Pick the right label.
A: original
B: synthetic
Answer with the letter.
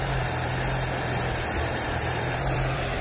B